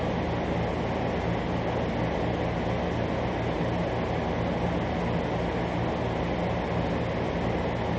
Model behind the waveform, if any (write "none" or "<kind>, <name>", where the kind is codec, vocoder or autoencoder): none